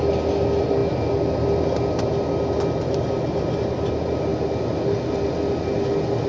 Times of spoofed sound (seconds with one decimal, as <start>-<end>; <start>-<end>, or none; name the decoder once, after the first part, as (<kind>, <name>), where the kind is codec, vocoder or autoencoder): none